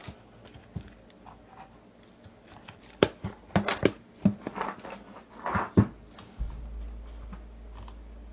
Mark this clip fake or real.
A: real